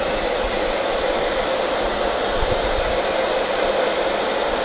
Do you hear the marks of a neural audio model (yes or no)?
no